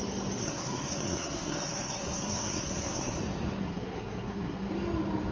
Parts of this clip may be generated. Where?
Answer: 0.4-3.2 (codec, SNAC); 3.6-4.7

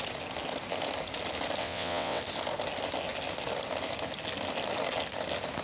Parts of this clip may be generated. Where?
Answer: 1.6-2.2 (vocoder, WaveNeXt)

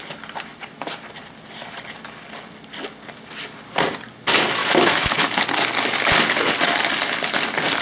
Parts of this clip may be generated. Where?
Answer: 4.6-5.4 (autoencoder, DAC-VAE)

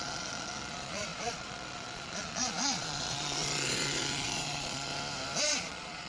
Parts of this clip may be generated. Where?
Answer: 0.0-4.9 (vocoder, Vocos); 5.4-6.1

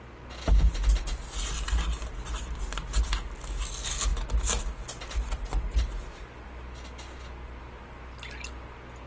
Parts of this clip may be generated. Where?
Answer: none

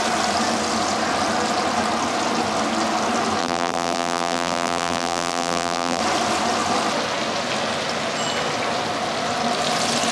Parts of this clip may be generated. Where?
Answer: 3.4-6.0 (vocoder, BigVGAN v2)

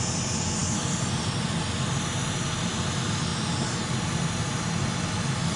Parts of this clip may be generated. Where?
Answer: none

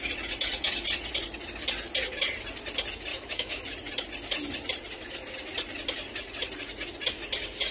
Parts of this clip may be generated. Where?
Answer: 3.1-3.6 (autoencoder, DAC-VAE)